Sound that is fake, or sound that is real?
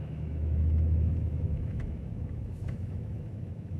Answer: fake